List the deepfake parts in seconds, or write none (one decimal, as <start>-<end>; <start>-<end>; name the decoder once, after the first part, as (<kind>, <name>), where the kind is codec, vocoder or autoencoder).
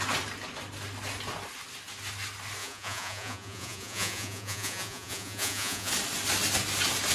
2.6-5.9 (vocoder, Vocos)